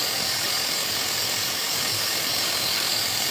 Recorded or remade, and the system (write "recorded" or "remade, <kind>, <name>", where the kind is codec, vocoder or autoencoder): remade, codec, DAC